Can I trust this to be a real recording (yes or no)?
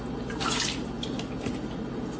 yes